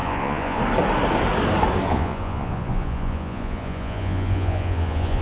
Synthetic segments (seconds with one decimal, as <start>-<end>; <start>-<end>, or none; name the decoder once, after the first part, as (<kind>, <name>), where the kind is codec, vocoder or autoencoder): 0.0-0.6 (vocoder, Vocos); 1.9-5.2